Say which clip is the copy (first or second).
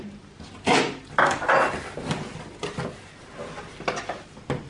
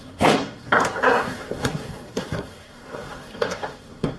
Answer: second